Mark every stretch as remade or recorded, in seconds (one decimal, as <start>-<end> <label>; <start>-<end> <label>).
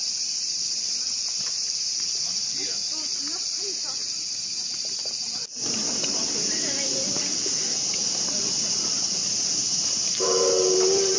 0.0-11.2 remade